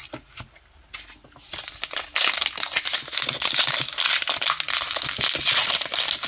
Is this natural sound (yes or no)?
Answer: yes